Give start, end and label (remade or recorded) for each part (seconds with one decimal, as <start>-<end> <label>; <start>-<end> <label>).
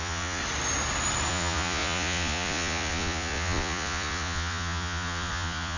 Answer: 0.0-0.4 remade; 0.4-1.3 recorded; 1.3-5.8 remade